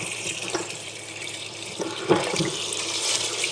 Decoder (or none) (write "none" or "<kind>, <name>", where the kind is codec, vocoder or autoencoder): vocoder, BigVGAN v2